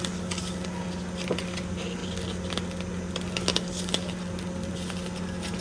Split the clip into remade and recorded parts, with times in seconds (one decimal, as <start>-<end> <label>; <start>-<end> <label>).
0.0-5.6 recorded